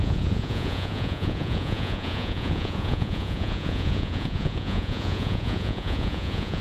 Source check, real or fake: fake